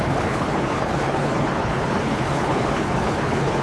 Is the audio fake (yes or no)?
yes